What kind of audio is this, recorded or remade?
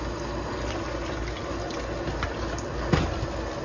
recorded